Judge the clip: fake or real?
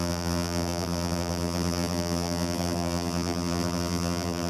fake